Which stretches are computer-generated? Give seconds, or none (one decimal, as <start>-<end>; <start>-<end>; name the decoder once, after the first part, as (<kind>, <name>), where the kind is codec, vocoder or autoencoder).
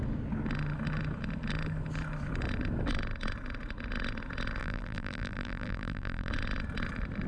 4.6-6.3 (vocoder, BigVGAN v2)